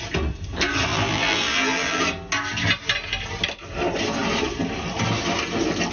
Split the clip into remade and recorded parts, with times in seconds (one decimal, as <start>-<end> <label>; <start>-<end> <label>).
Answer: 0.0-0.9 recorded; 0.9-2.0 remade; 2.0-5.9 recorded